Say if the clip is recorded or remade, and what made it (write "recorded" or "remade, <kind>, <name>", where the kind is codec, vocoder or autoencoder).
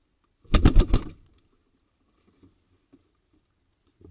recorded